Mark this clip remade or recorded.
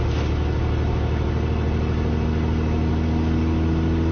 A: recorded